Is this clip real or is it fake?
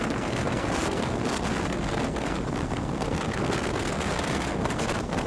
fake